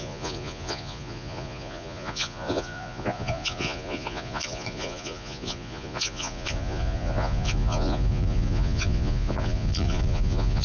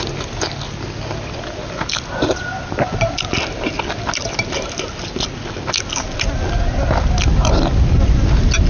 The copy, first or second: first